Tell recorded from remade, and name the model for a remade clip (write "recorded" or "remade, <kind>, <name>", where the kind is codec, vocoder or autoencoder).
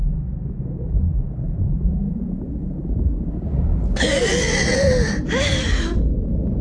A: recorded